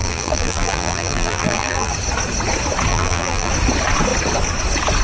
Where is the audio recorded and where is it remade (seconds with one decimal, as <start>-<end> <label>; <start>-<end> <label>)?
0.0-1.9 remade; 1.9-2.9 recorded; 2.9-3.5 remade; 3.5-5.0 recorded

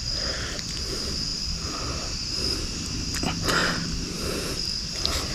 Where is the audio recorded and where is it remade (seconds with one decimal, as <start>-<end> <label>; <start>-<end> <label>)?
0.0-3.6 recorded; 3.6-4.3 remade; 4.3-5.3 recorded

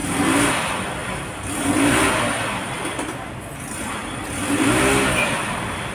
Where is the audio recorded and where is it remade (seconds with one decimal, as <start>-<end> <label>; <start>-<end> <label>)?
0.0-0.5 remade; 0.5-1.0 recorded; 1.0-2.2 remade; 2.2-4.0 recorded; 4.0-4.7 remade; 4.7-5.9 recorded

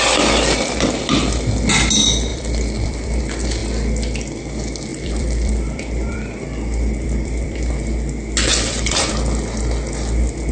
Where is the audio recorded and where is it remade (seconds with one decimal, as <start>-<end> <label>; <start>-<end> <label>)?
0.0-2.3 recorded; 2.3-3.2 remade; 3.2-4.9 recorded; 4.9-7.7 remade; 7.7-8.5 recorded; 8.5-9.1 remade; 9.1-10.5 recorded

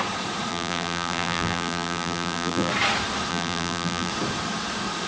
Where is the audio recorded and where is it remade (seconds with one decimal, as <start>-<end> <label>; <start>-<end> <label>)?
0.0-0.5 recorded; 0.5-2.7 remade; 2.7-3.3 recorded; 3.3-4.1 remade; 4.1-5.1 recorded

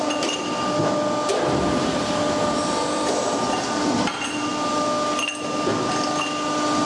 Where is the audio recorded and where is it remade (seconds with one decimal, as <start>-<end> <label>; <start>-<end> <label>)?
0.0-1.3 recorded; 1.3-3.1 remade; 3.1-6.9 recorded

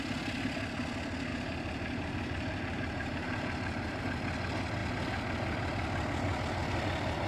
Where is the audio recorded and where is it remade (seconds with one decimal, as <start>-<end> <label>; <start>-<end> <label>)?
0.0-1.3 recorded; 1.3-4.0 remade; 4.0-7.3 recorded